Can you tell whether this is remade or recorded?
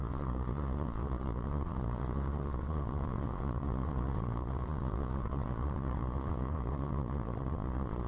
remade